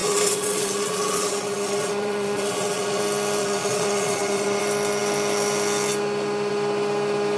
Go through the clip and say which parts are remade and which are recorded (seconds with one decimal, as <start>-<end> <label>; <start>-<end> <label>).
0.0-3.0 remade; 3.0-3.4 recorded; 3.4-4.6 remade; 4.6-7.4 recorded